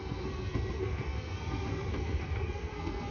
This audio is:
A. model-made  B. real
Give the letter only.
A